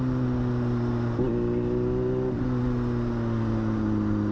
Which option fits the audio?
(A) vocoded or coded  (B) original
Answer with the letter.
B